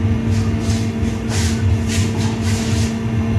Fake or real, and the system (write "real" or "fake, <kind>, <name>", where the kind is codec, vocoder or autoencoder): real